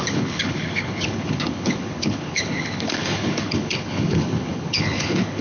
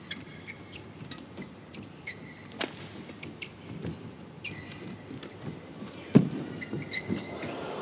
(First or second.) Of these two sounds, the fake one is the first